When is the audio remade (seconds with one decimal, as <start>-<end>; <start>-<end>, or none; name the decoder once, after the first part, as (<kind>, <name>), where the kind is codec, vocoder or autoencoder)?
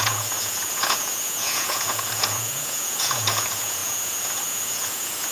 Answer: 0.0-5.3 (vocoder, Vocos)